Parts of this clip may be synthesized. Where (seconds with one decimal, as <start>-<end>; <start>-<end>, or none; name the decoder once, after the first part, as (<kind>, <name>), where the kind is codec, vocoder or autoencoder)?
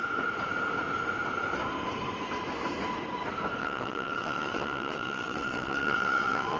3.6-6.6 (vocoder, WaveNeXt)